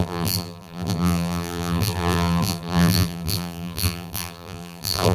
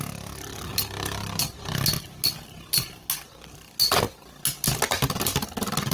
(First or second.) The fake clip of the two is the first